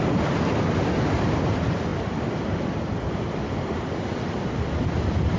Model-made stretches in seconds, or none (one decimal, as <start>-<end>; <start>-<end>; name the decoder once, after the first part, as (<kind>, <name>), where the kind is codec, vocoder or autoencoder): none